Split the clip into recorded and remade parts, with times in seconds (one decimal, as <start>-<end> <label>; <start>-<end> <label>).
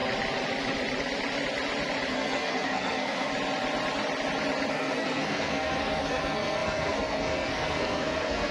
0.0-2.1 recorded; 2.1-3.3 remade; 3.3-4.7 recorded; 4.7-8.5 remade